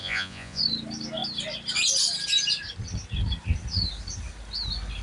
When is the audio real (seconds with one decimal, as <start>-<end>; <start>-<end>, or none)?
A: 0.6-5.0